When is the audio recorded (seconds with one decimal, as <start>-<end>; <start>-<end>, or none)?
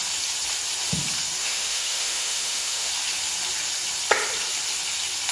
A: 0.0-1.4; 2.9-5.3